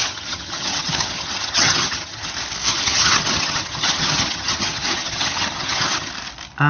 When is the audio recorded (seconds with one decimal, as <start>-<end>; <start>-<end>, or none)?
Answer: 2.3-2.7; 6.1-6.7

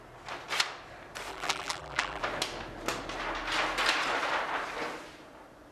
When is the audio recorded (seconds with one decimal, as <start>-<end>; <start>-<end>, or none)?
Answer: 0.0-1.3; 2.2-5.7

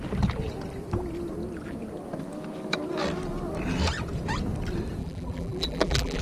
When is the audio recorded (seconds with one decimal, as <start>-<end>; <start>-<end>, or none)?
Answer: 0.0-5.0